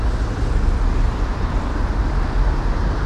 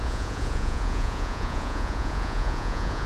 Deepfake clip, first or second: second